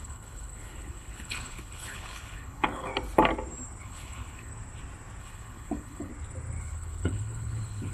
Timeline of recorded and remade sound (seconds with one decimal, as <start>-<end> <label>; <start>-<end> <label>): 0.0-2.9 remade; 2.9-3.8 recorded; 3.8-4.5 remade; 4.5-5.2 recorded; 5.2-6.1 remade; 6.1-6.6 recorded; 6.6-7.9 remade